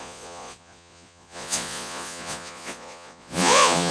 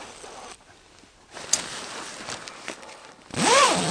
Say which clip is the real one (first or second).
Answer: second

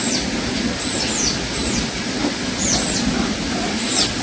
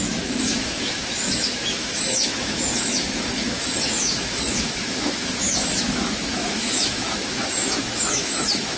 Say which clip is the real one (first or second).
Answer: first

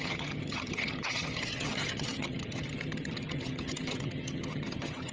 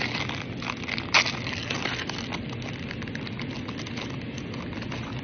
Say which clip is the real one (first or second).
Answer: second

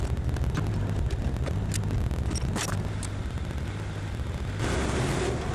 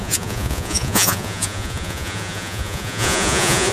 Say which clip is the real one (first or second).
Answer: first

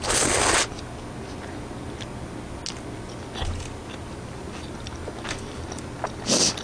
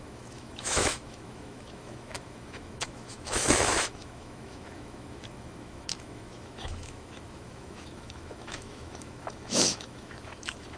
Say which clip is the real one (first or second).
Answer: first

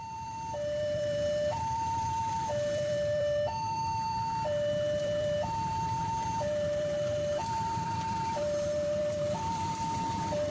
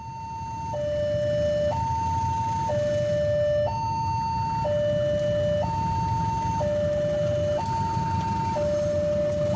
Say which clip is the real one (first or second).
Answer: second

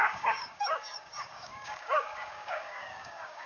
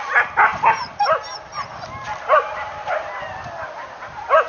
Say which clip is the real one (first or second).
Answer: second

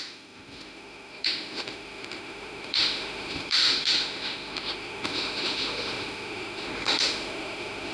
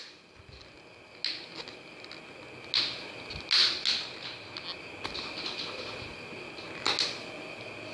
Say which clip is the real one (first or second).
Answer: second